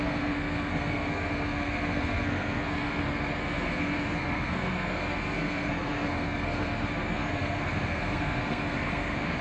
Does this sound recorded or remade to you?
remade